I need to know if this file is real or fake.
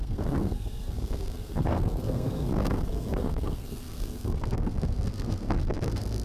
fake